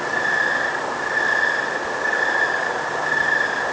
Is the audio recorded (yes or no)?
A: yes